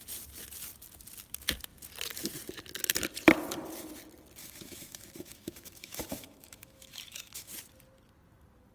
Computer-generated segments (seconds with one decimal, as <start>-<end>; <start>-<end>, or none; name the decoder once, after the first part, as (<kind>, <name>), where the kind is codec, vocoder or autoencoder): 4.4-7.5 (autoencoder, DAC-VAE)